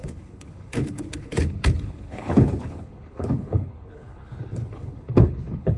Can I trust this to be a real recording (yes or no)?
no